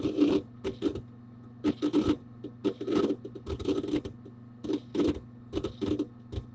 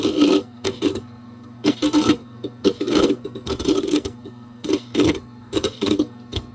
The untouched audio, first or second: first